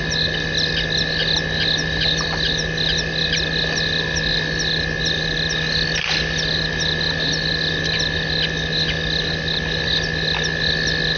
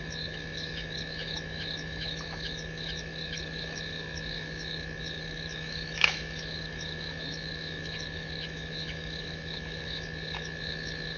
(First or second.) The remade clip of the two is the second